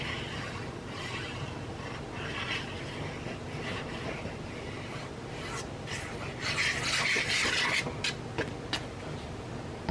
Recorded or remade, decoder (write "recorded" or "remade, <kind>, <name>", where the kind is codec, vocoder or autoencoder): recorded